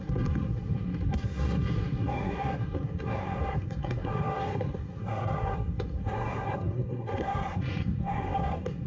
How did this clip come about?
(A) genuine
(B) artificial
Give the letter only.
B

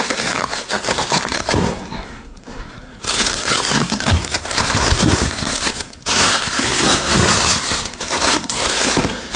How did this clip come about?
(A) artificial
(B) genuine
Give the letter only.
A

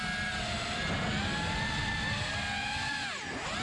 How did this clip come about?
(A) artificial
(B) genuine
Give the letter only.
B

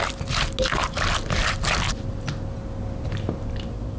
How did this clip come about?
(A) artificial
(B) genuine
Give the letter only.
B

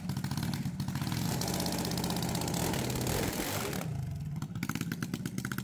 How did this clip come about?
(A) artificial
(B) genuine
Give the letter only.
B